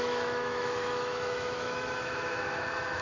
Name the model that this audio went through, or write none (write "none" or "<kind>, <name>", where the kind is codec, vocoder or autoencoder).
autoencoder, DAC-VAE